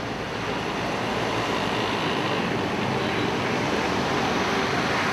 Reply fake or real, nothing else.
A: real